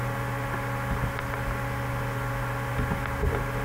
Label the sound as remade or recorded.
recorded